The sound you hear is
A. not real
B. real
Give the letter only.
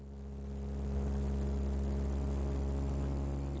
B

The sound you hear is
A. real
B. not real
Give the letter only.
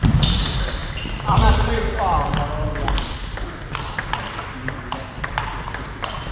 A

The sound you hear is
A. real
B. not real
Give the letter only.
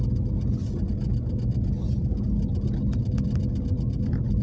A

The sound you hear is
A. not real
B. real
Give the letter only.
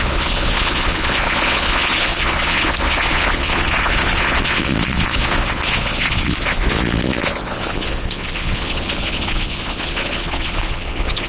A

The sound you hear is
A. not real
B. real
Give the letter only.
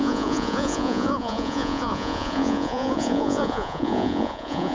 A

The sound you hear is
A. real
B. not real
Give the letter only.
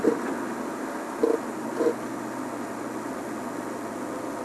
A